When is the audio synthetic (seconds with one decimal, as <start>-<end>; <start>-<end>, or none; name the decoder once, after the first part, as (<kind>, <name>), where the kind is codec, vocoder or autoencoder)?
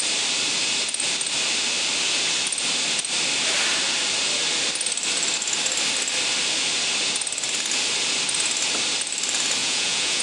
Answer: 9.6-10.2 (vocoder, Vocos)